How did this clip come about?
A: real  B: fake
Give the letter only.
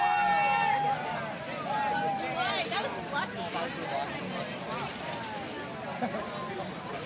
A